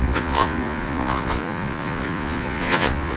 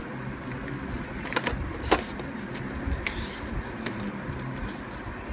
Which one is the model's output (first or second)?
first